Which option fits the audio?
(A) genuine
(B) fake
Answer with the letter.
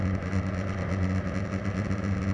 A